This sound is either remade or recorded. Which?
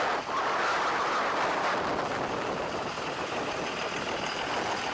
recorded